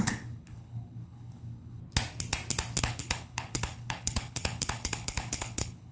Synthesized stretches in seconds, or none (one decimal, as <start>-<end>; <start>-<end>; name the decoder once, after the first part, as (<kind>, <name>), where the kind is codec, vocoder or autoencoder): 0.0-1.8 (codec, HILCodec); 2.8-5.9